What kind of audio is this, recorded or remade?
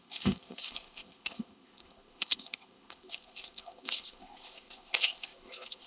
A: remade